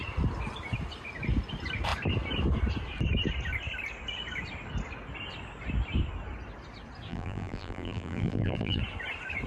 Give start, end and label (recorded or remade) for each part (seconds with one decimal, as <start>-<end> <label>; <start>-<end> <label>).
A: 0.0-7.1 recorded; 7.1-8.8 remade; 8.8-9.5 recorded